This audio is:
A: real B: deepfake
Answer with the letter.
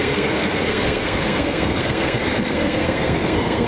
B